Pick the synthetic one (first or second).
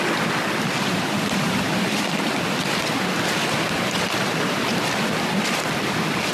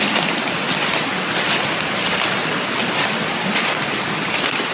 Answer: first